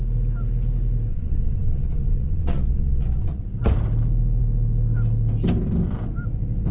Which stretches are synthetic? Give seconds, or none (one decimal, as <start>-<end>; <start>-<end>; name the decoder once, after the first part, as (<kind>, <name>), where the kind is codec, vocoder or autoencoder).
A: 1.1-3.4 (vocoder, Vocos)